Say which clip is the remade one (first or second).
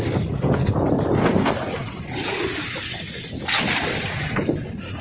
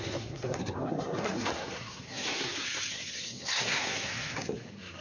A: second